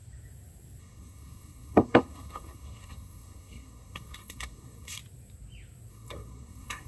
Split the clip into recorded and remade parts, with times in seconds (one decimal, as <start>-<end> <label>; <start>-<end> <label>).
0.0-0.8 recorded; 0.8-5.0 remade; 5.0-5.9 recorded; 5.9-6.9 remade